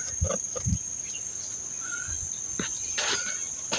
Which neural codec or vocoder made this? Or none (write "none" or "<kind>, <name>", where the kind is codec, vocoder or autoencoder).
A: none